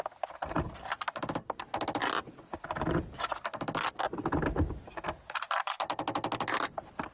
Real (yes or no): yes